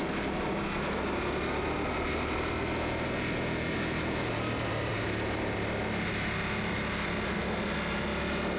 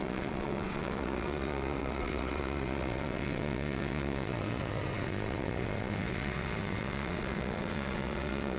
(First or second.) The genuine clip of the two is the first